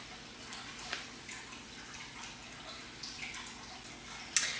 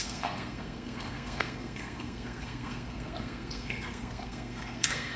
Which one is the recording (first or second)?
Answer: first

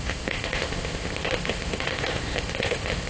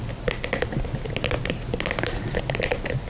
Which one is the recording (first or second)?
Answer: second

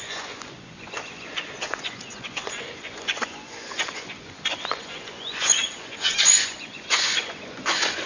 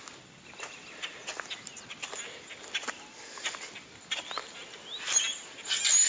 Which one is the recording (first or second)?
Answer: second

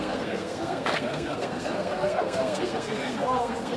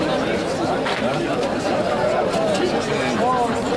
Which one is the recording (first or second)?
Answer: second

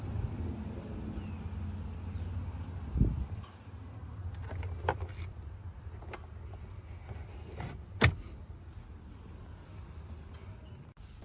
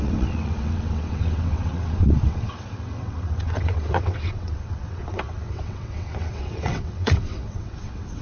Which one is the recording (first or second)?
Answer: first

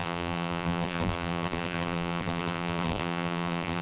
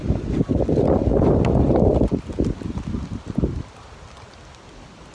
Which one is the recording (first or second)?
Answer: second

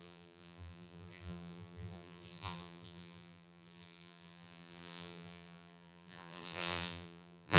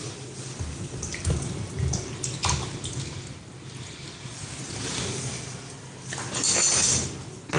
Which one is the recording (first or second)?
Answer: second